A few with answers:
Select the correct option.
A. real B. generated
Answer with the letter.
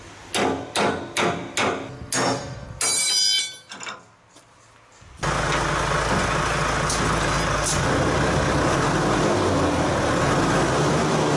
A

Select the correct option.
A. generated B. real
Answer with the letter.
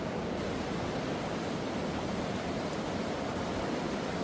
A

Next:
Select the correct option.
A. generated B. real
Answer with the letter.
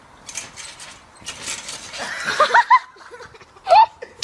A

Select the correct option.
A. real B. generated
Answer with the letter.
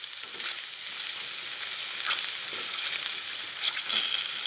A